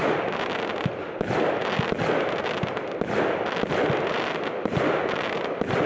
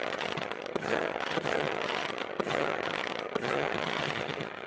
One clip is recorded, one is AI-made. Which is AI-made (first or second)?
second